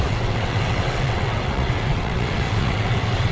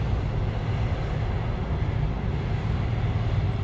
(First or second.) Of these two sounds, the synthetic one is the first